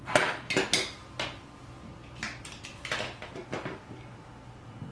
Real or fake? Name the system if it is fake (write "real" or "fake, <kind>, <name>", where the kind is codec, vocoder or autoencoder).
real